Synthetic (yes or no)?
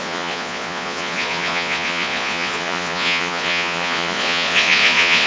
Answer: yes